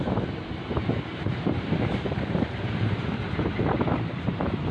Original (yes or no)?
no